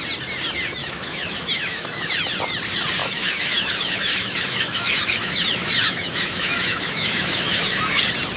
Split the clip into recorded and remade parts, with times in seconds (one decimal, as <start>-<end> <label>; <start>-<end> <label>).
0.0-0.8 recorded; 0.8-2.1 remade; 2.1-3.0 recorded; 3.0-8.0 remade; 8.0-8.4 recorded